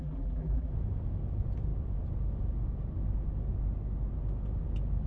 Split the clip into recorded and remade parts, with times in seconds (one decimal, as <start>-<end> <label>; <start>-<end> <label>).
0.0-0.7 remade; 0.7-5.1 recorded

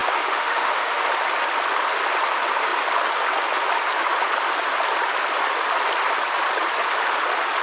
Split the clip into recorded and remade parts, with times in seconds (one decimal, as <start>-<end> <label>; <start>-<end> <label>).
0.0-1.1 remade; 1.1-7.6 recorded

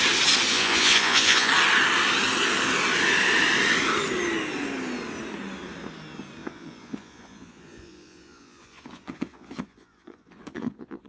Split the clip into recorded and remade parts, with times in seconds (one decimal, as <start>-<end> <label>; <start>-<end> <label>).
0.0-0.5 recorded; 0.5-1.5 remade; 1.5-6.4 recorded; 6.4-11.1 remade

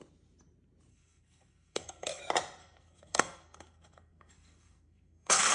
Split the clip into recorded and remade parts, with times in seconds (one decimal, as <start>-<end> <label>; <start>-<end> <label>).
0.0-0.9 recorded; 0.9-2.2 remade; 2.2-2.6 recorded; 2.6-5.5 remade

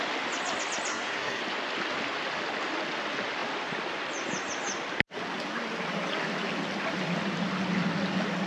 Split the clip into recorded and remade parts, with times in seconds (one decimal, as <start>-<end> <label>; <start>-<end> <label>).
0.0-0.9 recorded; 0.9-1.4 remade; 1.4-8.5 recorded

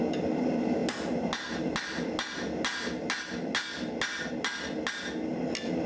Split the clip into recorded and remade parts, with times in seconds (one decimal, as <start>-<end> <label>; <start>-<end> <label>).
0.0-5.9 recorded

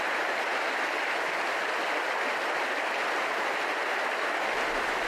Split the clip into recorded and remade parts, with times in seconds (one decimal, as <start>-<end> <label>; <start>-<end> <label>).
0.0-5.1 recorded